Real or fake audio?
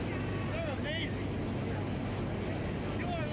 real